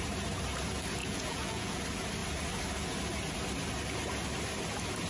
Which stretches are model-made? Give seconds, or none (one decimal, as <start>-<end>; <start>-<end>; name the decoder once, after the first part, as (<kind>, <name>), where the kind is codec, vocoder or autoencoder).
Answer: 1.0-1.8 (vocoder, Vocos)